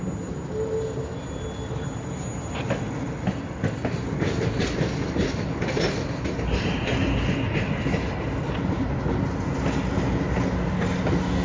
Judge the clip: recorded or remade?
recorded